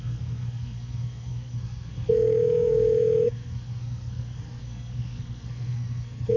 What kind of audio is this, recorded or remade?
remade